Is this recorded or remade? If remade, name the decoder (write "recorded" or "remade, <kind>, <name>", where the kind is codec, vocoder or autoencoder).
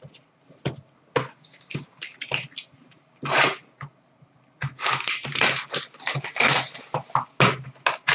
recorded